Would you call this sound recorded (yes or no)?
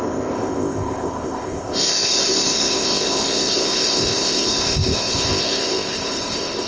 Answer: no